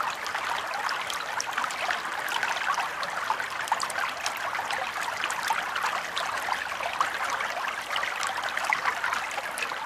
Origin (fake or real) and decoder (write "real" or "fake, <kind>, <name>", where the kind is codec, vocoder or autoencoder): real